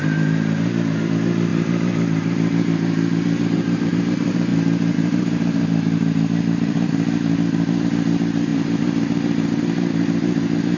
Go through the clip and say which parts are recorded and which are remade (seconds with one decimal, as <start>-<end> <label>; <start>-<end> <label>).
0.0-10.8 remade